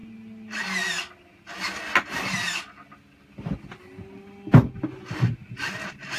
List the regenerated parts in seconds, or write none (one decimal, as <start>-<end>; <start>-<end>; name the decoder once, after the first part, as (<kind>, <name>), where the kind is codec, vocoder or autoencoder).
none